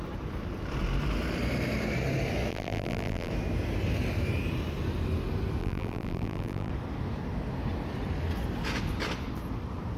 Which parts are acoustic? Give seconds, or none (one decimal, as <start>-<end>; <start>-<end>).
0.0-2.5; 3.3-5.6; 6.7-10.0